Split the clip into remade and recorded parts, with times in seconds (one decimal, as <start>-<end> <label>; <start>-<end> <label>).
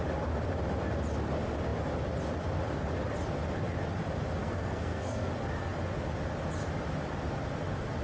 0.0-4.4 recorded; 4.4-5.3 remade; 5.3-8.0 recorded